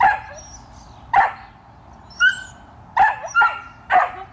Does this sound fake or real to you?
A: real